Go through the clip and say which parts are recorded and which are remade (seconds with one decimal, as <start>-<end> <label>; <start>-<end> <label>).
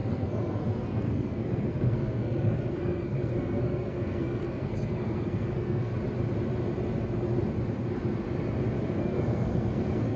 0.0-5.9 remade; 5.9-9.0 recorded; 9.0-10.2 remade